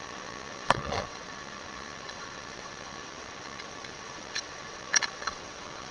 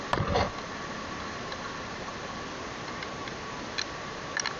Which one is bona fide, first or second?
second